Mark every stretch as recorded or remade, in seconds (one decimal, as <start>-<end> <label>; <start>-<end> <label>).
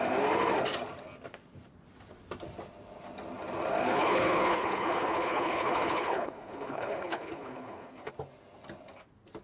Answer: 0.0-3.9 recorded; 3.9-8.1 remade; 8.1-9.4 recorded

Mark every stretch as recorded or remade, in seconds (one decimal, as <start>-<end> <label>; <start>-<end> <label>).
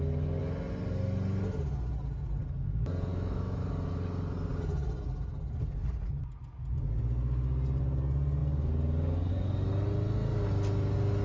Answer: 0.0-3.1 recorded; 3.1-3.6 remade; 3.6-11.2 recorded